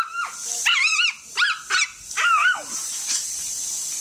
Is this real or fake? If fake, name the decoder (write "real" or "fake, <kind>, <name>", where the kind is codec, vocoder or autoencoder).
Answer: real